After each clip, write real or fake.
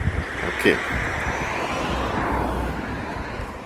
real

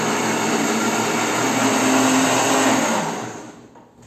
real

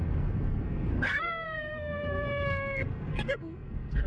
fake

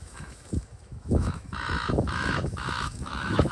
fake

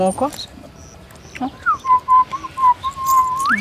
real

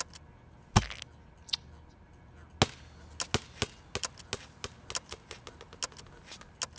real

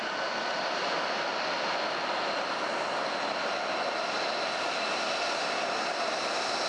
real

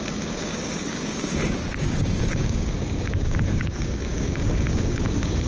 fake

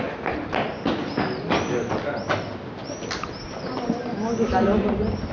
real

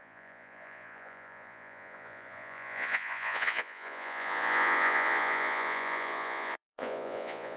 fake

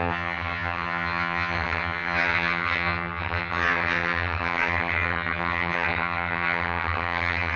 fake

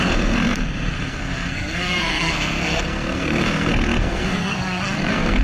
fake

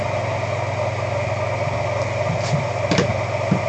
real